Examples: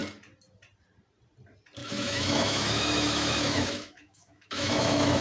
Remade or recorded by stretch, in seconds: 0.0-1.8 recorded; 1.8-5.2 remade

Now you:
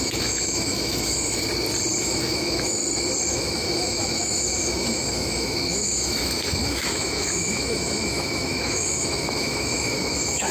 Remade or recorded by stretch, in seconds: 0.0-1.4 remade; 1.4-2.0 recorded; 2.0-2.8 remade; 2.8-3.3 recorded; 3.3-10.5 remade

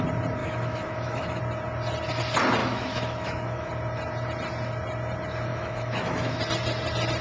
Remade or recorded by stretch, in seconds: 0.0-0.4 recorded; 0.4-1.4 remade; 1.4-2.6 recorded; 2.6-3.7 remade; 3.7-5.5 recorded; 5.5-6.4 remade; 6.4-7.2 recorded

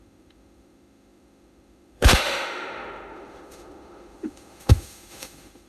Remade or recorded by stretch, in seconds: 0.0-5.7 remade

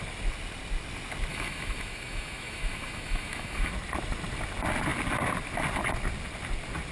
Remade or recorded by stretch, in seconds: 0.0-1.3 recorded; 1.3-3.7 remade; 3.7-6.9 recorded